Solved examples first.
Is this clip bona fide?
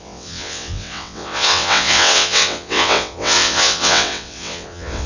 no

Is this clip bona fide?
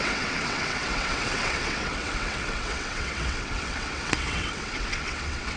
no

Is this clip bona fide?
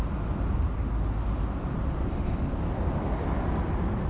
yes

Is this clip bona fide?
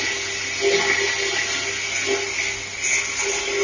yes